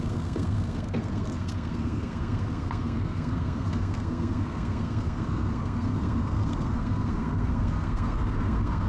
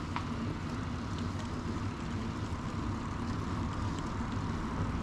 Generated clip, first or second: first